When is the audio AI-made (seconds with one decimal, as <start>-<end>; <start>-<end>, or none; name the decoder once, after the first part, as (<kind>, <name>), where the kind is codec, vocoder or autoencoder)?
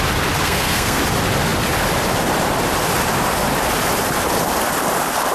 0.4-1.0 (codec, SNAC)